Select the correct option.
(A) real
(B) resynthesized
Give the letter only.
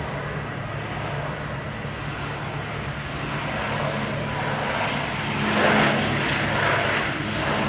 A